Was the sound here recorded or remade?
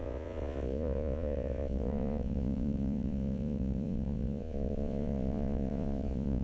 remade